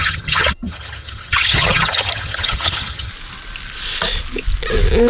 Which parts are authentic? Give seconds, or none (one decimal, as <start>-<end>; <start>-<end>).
3.1-5.1